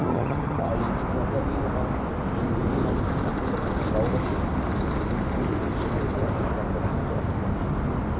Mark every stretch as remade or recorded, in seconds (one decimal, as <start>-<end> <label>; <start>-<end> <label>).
0.0-0.7 remade; 0.7-8.2 recorded